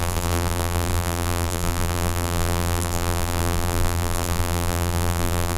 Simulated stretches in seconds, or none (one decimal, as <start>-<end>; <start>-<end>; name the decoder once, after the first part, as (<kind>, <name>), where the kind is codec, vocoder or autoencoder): 0.0-5.6 (vocoder, BigVGAN v2)